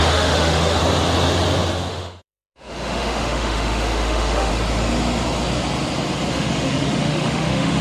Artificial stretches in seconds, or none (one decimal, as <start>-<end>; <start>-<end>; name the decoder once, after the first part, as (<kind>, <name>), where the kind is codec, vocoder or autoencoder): 0.0-0.8 (autoencoder, DAC-VAE); 1.9-4.5; 6.3-7.8